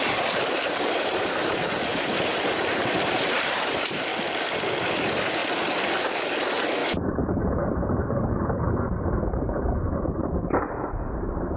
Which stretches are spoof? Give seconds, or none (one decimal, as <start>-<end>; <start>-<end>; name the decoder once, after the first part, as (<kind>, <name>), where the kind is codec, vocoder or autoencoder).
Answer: 0.0-4.1 (vocoder, BigVGAN v2); 4.9-5.4; 6.2-11.6